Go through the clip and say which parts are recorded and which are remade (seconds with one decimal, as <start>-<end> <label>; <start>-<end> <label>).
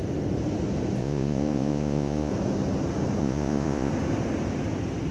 0.0-1.0 recorded; 1.0-2.3 remade; 2.3-3.2 recorded; 3.2-3.9 remade; 3.9-5.1 recorded